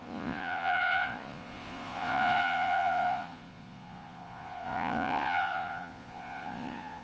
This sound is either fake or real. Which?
fake